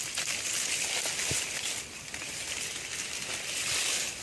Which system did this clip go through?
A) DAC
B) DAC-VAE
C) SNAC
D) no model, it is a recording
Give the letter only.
D